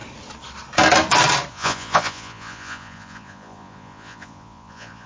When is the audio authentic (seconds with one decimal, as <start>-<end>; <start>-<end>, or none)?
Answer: 0.0-1.5